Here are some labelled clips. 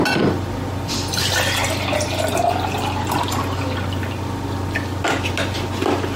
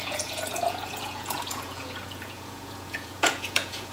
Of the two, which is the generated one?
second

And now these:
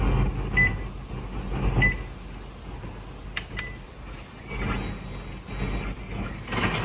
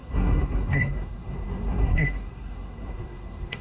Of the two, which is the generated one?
second